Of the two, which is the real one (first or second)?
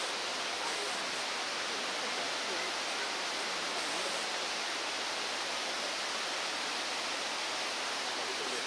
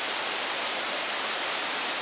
first